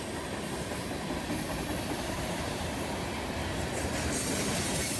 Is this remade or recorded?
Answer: remade